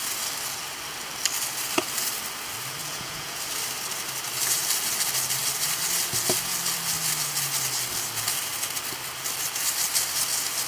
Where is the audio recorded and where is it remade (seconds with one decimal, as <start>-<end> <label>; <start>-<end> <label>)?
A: 0.0-2.8 recorded; 2.8-3.4 remade; 3.4-10.7 recorded